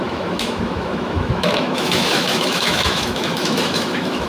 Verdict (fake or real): fake